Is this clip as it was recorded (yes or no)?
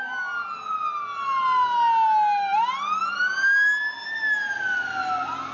yes